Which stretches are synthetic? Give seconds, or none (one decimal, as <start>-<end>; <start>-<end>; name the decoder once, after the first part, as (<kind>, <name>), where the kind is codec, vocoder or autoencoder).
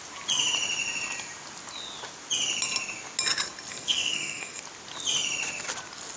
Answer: 3.7-4.6 (codec, SNAC)